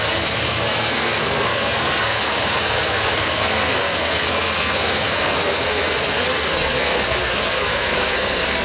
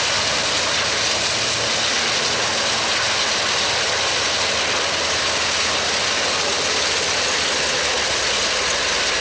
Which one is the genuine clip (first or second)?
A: second